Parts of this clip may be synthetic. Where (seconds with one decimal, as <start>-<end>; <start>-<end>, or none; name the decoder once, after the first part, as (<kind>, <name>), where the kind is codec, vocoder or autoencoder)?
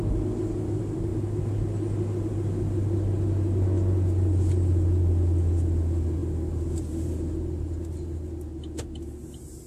none